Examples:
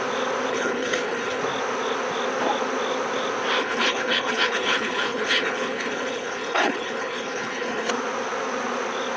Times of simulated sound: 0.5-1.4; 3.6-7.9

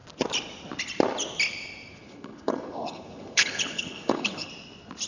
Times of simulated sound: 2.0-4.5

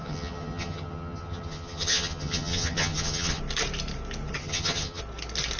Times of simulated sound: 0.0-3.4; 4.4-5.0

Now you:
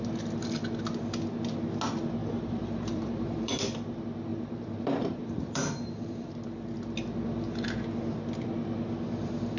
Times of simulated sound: 2.2-3.6; 4.3-6.3